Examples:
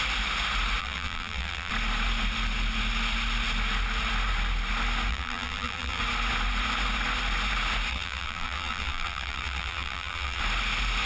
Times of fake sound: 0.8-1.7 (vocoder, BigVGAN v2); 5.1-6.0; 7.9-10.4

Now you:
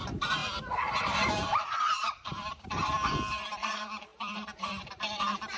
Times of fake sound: 0.0-2.8 (vocoder, BigVGAN v2); 3.5-5.6

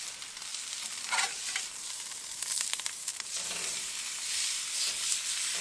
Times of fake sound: 0.5-3.9 (vocoder, BigVGAN v2)